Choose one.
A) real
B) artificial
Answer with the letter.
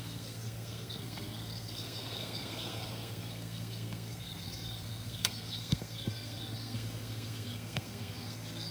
B